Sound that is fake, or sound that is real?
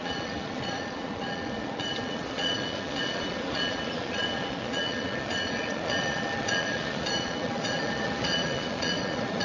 fake